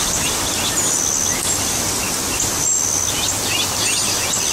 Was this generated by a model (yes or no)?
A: no